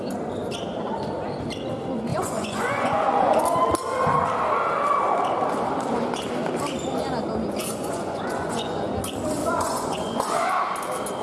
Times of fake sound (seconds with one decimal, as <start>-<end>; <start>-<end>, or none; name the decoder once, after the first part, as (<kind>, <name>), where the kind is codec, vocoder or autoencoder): 2.1-3.4 (vocoder, Vocos); 7.6-8.9; 9.4-10.5